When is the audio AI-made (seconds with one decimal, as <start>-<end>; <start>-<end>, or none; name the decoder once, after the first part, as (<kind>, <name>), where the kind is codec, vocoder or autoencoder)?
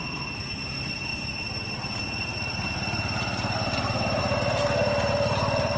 none